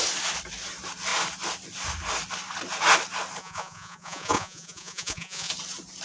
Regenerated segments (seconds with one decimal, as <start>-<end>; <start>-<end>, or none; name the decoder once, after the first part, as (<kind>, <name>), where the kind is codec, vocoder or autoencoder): 3.4-5.5 (vocoder, Vocos)

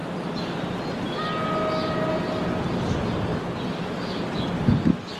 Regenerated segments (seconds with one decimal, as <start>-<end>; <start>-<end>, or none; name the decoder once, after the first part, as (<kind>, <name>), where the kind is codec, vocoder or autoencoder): none

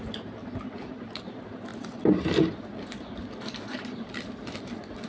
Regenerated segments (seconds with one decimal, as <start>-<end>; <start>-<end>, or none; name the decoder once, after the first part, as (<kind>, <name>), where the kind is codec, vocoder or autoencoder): 0.4-1.2 (vocoder, BigVGAN v2); 1.7-5.1

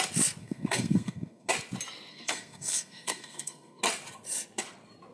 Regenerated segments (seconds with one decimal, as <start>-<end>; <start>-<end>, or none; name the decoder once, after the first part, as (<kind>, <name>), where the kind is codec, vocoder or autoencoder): 0.4-1.5 (codec, SNAC); 2.1-3.8

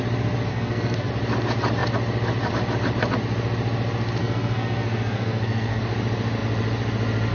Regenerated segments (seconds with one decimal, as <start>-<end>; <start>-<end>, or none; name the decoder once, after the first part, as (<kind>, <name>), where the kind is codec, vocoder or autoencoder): 0.5-1.1 (codec, SNAC); 4.2-5.8

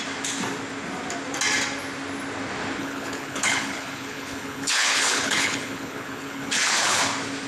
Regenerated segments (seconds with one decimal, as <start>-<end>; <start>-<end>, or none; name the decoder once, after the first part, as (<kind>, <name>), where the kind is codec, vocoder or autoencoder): 2.8-7.0 (codec, HILCodec)

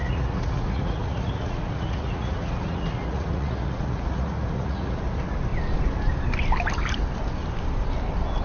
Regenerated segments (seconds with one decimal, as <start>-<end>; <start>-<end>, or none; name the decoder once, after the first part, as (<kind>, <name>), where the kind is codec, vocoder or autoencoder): 0.0-5.0 (vocoder, Vocos)